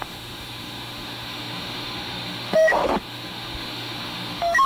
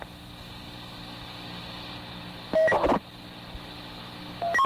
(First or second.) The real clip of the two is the second